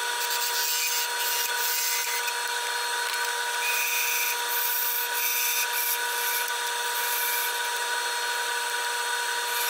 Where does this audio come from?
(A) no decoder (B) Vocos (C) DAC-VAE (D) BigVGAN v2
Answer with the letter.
A